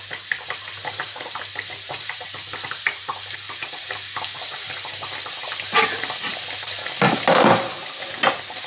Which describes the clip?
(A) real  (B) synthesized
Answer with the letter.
A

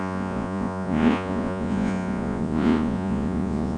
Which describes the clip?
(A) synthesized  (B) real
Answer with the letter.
A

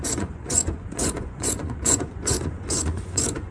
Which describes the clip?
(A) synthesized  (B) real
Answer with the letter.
A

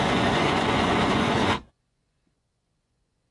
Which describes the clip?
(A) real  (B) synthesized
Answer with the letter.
B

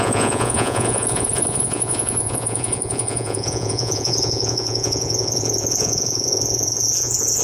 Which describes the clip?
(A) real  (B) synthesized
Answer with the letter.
B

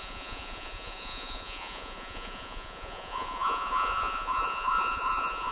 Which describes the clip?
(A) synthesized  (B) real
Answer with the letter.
A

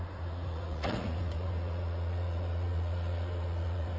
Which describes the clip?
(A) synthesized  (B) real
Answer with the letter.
A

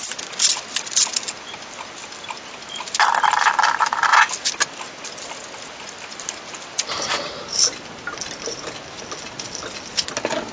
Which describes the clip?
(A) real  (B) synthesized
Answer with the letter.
A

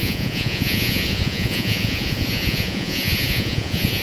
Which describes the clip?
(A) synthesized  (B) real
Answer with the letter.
A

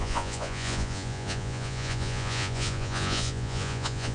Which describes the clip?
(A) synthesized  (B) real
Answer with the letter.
A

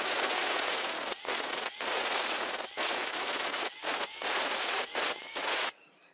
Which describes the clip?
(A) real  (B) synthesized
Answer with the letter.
B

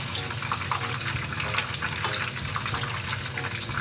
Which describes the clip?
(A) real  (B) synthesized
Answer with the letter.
A